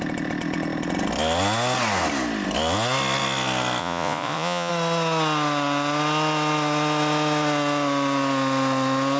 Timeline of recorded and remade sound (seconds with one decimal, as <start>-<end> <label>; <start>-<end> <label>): 0.0-3.8 recorded; 3.8-4.7 remade; 4.7-9.2 recorded